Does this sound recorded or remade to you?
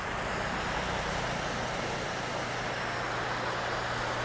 recorded